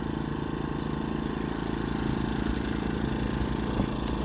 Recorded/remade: recorded